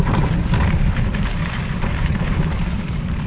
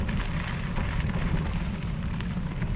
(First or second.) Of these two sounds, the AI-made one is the first